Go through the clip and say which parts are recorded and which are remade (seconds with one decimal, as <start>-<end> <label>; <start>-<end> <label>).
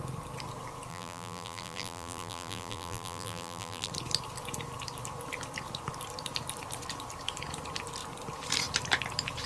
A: 0.0-0.9 recorded; 0.9-3.9 remade; 3.9-9.5 recorded